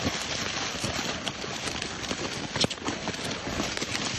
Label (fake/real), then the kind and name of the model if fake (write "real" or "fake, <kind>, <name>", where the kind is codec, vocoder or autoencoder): real